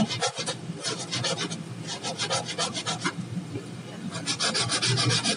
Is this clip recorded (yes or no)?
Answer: yes